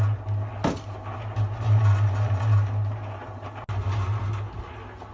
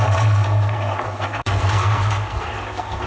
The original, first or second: first